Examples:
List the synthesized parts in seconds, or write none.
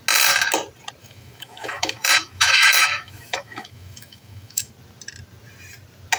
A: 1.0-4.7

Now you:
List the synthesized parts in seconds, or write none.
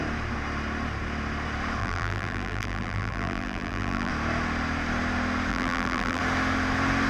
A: 1.8-4.1; 5.5-6.2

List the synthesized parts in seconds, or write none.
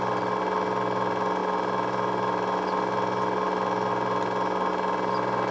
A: none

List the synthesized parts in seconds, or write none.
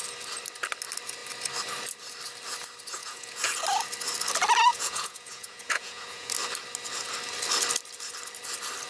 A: 3.0-3.6; 4.7-6.3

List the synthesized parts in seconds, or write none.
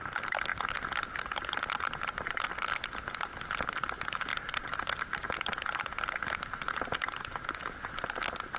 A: none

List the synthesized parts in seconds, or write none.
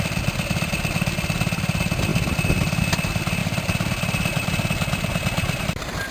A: none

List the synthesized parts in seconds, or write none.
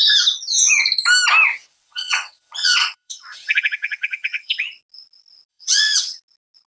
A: 1.7-4.7; 5.5-6.2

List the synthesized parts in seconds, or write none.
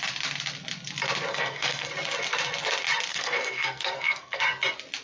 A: 1.3-1.9; 3.1-4.4